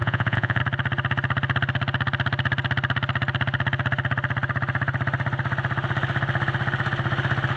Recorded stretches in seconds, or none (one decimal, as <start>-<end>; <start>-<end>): 0.6-7.6